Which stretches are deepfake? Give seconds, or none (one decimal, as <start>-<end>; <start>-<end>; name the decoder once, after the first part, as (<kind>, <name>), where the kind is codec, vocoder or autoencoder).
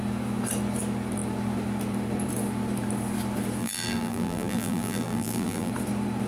3.6-5.7 (vocoder, BigVGAN v2)